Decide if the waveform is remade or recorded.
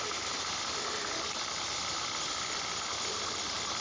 recorded